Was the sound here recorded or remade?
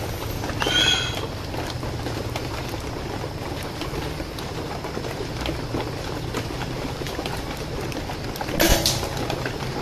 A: recorded